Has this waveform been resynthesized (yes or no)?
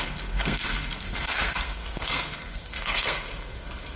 yes